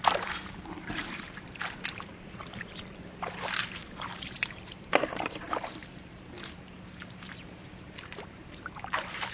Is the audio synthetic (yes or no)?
yes